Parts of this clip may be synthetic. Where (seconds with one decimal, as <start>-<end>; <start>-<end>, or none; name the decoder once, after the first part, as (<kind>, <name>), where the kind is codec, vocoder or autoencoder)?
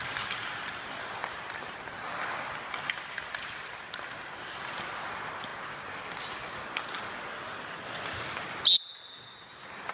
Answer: none